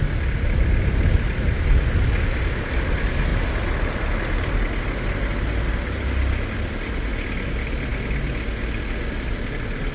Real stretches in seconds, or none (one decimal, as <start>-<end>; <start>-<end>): 0.0-9.9